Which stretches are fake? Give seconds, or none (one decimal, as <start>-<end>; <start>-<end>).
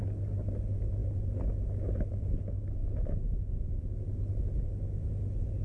none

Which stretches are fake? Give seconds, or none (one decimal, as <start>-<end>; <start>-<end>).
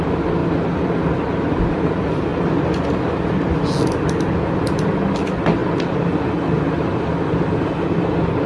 none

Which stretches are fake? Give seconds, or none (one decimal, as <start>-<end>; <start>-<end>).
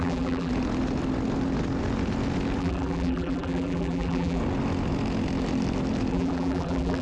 0.0-0.5; 2.6-4.4; 6.1-7.0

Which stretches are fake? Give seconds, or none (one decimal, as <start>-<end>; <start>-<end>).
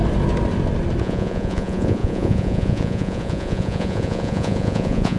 1.0-5.2